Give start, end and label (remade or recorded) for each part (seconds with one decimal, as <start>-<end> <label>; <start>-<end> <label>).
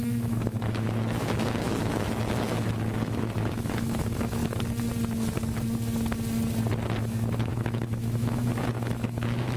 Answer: 0.0-4.4 remade; 4.4-7.0 recorded; 7.0-9.6 remade